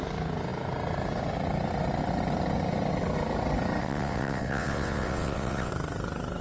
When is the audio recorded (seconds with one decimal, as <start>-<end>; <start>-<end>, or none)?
0.0-3.8; 5.7-6.4